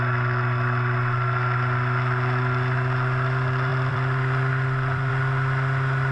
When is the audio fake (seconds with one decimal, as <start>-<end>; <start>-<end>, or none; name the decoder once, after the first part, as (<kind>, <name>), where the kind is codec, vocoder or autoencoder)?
3.7-5.1 (vocoder, BigVGAN v2)